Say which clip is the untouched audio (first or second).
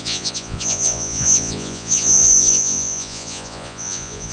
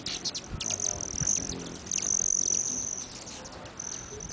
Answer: second